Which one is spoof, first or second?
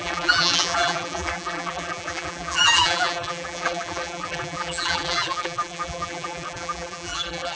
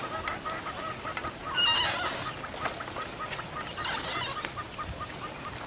first